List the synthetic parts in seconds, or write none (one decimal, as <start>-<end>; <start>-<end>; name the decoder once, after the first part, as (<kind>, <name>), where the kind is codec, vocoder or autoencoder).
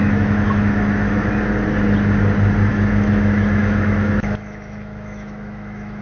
0.0-1.3 (autoencoder, DAC-VAE); 2.7-6.0